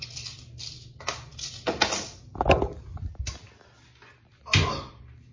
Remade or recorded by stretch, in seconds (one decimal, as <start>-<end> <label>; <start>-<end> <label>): 0.0-5.3 recorded